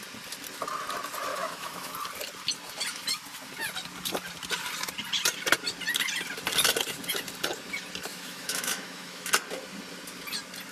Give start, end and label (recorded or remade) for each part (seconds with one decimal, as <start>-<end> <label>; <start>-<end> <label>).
0.0-1.3 recorded; 1.3-1.9 remade; 1.9-8.1 recorded; 8.1-9.3 remade; 9.3-10.7 recorded